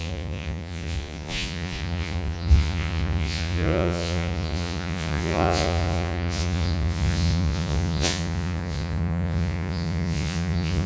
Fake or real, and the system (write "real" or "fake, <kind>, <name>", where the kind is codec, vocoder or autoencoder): fake, vocoder, Vocos